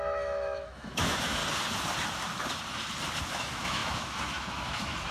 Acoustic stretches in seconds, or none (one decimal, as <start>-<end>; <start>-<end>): 1.4-3.2

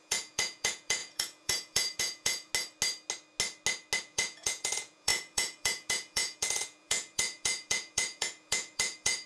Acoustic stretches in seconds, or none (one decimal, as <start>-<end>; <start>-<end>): 2.5-4.0

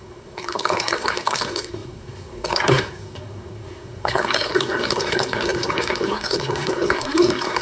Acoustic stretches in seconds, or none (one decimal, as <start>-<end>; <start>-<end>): none

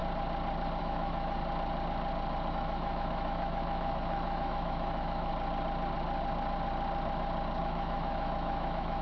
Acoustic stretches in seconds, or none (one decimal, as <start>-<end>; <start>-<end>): 0.0-0.8; 1.4-2.5; 5.3-7.6

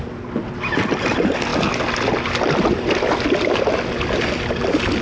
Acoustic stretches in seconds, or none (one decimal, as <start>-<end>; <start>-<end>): 0.0-5.0